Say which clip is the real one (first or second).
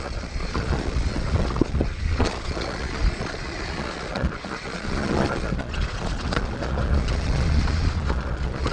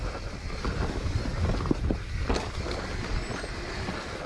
second